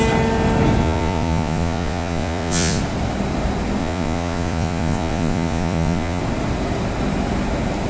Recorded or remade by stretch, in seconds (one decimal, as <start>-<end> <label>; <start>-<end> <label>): 0.0-0.8 recorded; 0.8-2.8 remade; 2.8-3.8 recorded; 3.8-6.2 remade; 6.2-7.9 recorded